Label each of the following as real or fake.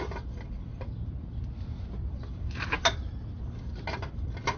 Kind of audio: real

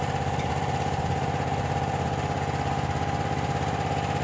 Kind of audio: real